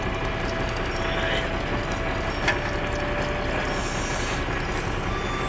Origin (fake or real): real